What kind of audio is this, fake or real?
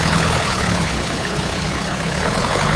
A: fake